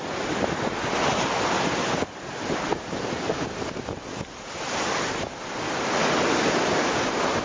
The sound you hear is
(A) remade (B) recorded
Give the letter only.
B